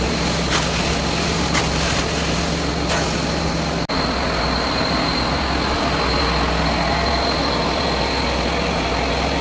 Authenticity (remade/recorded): recorded